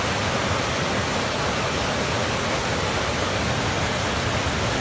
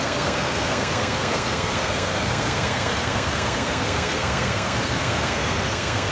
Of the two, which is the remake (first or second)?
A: second